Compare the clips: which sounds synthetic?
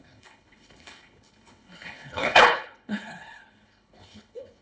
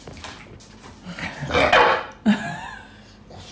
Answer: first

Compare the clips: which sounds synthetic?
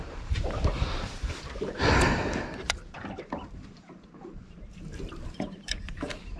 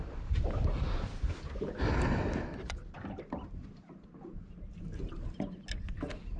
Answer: first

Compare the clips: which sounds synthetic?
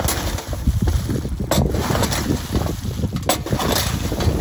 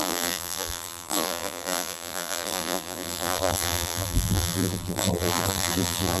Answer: second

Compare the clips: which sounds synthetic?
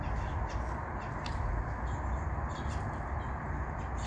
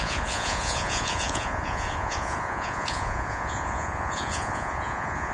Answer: second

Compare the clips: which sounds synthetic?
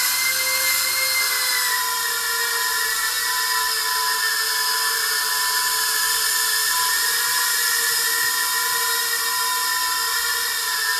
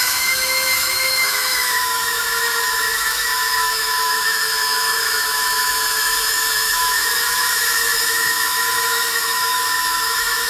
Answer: second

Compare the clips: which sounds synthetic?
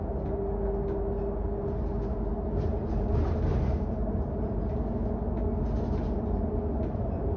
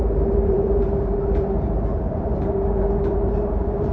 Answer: second